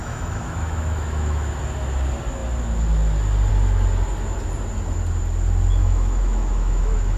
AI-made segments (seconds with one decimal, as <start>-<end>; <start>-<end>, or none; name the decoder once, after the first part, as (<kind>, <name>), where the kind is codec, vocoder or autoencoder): 0.0-1.6 (autoencoder, DAC-VAE); 5.8-7.2